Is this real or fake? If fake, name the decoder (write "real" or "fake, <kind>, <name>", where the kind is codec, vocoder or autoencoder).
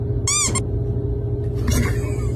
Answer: real